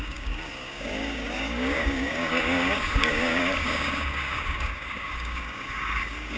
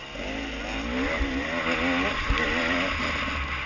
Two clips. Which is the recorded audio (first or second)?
second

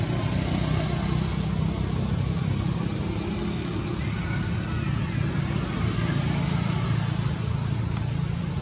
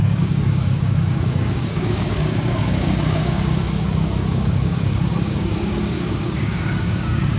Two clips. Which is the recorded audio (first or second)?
first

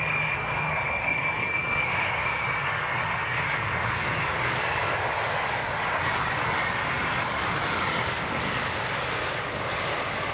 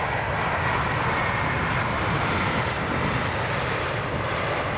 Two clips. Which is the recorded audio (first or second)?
second